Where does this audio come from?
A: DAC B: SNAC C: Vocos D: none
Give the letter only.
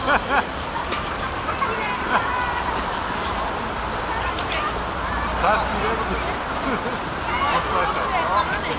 D